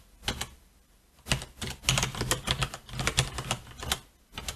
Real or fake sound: real